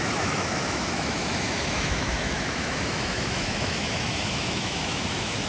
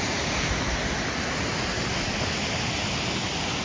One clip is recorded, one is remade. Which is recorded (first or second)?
second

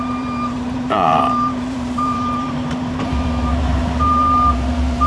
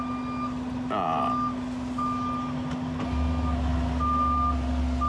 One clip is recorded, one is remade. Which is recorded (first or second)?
second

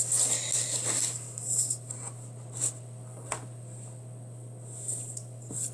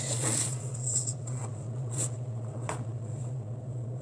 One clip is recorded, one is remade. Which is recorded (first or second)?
first